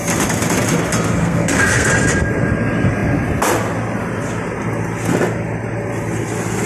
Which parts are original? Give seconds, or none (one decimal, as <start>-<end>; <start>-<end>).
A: 0.0-1.2; 1.9-6.7